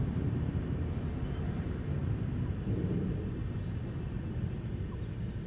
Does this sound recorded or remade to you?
recorded